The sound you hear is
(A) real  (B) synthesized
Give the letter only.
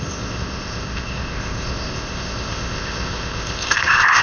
B